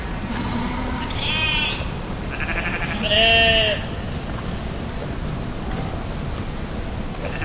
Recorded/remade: recorded